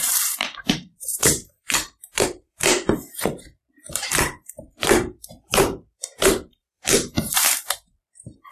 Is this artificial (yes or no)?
yes